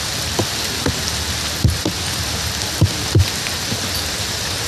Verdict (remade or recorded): recorded